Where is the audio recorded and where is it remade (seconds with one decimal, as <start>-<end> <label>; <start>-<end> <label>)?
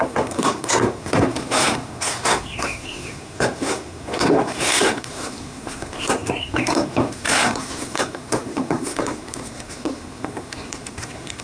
0.0-11.4 remade